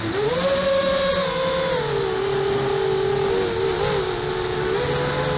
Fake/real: real